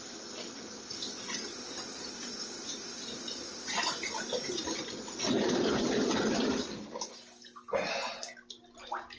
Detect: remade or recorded recorded